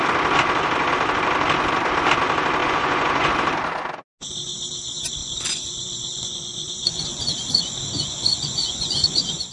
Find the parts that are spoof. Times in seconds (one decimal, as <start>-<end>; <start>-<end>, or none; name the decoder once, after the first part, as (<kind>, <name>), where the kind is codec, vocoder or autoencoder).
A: 2.6-3.3 (vocoder, Vocos); 5.2-9.5